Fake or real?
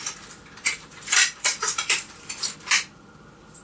fake